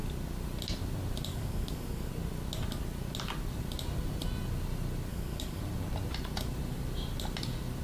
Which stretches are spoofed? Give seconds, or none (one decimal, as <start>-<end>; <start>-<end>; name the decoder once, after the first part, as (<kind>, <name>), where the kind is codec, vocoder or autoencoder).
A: 1.3-2.1 (codec, DAC); 5.1-5.6